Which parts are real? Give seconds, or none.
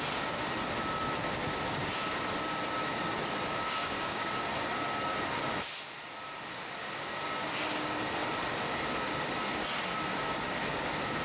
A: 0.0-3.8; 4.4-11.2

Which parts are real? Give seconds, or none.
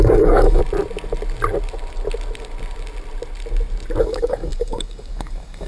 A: 0.6-4.0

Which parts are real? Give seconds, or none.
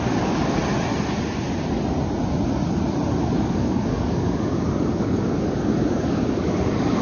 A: 0.6-3.2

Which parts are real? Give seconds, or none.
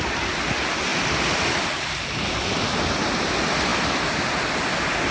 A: 0.0-5.1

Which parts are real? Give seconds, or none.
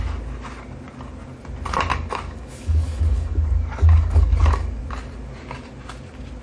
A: 0.0-1.9; 4.8-6.4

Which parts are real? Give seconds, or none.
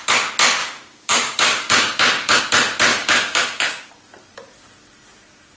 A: 0.0-0.6; 2.4-2.9; 3.9-5.6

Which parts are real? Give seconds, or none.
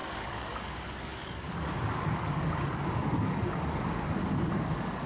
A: none